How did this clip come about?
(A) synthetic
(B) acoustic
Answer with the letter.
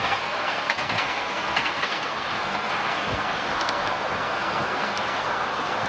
A